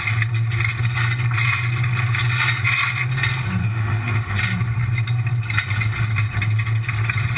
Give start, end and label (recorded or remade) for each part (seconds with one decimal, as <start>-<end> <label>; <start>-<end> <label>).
0.0-3.6 recorded; 3.6-4.4 remade; 4.4-7.4 recorded